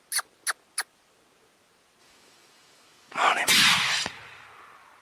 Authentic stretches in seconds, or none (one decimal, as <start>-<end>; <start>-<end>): 0.0-2.0; 3.5-5.0

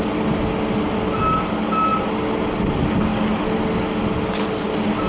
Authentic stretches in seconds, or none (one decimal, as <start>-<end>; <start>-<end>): 0.0-5.1